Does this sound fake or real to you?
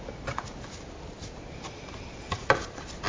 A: real